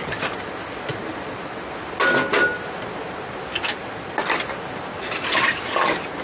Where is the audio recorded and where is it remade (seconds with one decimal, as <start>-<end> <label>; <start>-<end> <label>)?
0.0-6.2 recorded